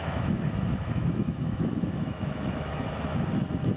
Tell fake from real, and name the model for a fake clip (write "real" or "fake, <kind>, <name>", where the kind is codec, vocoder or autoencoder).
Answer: fake, autoencoder, DAC-VAE